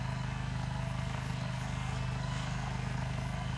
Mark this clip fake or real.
fake